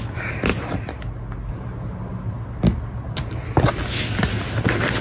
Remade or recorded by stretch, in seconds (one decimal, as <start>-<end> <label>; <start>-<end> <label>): 0.0-5.0 recorded